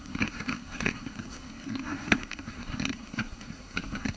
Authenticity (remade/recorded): remade